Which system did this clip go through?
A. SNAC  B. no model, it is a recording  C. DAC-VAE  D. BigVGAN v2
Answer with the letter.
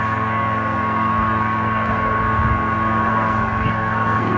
A